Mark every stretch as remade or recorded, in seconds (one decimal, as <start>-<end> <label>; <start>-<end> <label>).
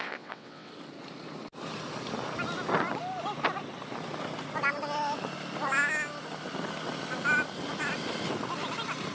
0.0-0.7 remade; 0.7-9.1 recorded